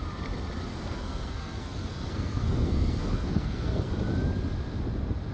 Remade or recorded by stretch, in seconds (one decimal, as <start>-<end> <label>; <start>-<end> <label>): 0.0-0.7 recorded; 0.7-3.9 remade; 3.9-5.3 recorded